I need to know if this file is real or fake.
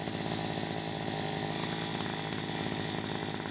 real